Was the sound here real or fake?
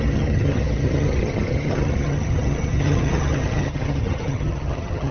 fake